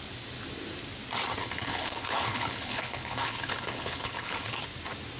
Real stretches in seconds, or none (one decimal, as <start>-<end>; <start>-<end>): 0.0-1.4; 4.5-5.2

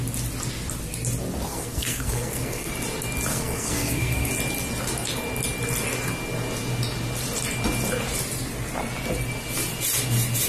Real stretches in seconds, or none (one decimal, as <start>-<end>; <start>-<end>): 0.0-1.5; 2.7-3.3; 4.3-10.5

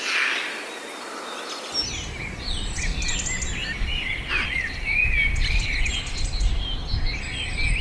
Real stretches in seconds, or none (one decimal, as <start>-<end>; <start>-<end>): 0.0-7.8